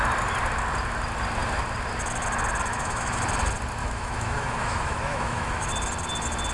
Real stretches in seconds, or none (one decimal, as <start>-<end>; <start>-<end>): 0.0-2.7; 3.2-3.8; 5.7-6.5